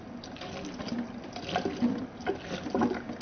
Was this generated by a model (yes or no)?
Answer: no